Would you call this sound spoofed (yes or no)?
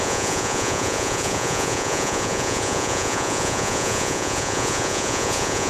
yes